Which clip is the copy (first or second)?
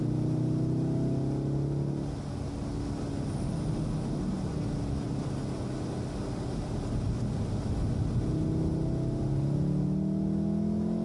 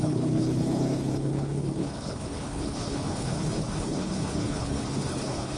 second